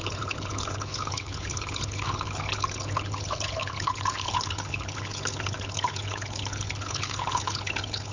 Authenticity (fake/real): fake